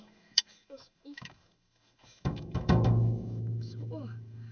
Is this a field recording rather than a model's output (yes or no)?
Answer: no